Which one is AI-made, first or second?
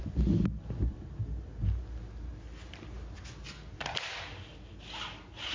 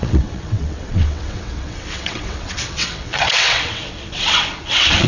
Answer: second